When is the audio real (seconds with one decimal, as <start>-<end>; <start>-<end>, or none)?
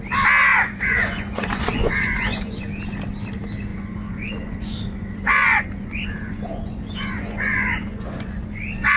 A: 0.0-0.5; 2.6-3.7